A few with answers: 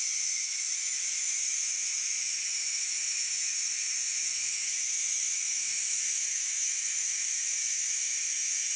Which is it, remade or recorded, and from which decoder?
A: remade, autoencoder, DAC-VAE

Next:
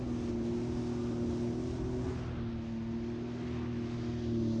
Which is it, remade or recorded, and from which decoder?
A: recorded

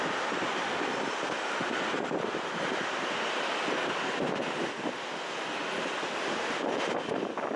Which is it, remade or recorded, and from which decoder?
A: recorded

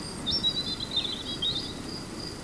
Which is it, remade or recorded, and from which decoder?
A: recorded